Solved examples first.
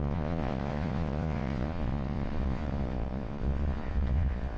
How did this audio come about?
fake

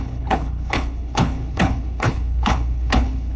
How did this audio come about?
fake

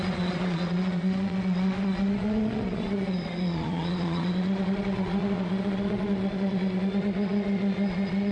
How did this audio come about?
fake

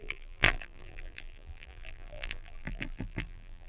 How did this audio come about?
fake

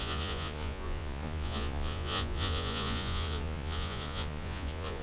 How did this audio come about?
fake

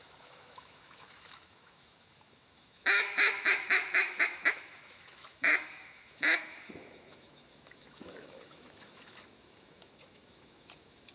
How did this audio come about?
fake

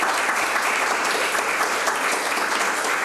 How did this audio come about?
real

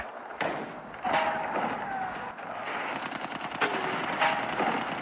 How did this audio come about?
real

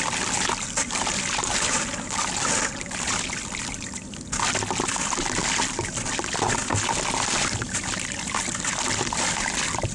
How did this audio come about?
real